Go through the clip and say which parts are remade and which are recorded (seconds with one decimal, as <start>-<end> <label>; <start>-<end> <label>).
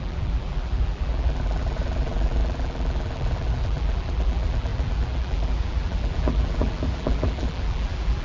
0.0-8.2 remade